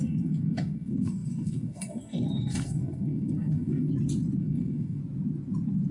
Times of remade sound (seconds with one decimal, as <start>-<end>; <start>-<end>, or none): 0.0-3.9; 4.4-5.0